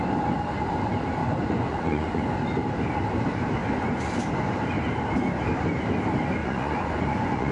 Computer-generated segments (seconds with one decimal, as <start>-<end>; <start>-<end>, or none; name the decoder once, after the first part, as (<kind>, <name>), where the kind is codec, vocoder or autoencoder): 1.2-2.2 (vocoder, Vocos); 6.4-7.5